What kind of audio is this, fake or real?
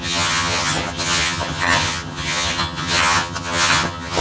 fake